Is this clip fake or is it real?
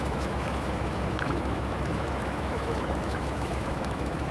fake